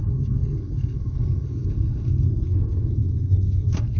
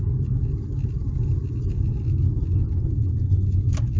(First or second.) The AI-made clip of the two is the first